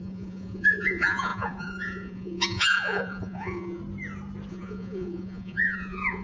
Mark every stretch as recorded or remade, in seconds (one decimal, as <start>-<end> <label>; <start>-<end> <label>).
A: 0.0-3.8 remade; 3.8-4.5 recorded; 4.5-6.2 remade